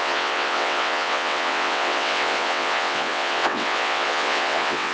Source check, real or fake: fake